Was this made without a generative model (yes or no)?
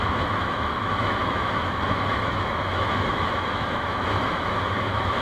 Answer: no